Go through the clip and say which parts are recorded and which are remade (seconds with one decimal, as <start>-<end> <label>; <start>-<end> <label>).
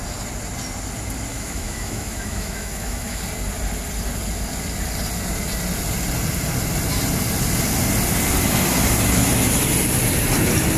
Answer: 0.0-1.3 recorded; 1.3-3.2 remade; 3.2-10.8 recorded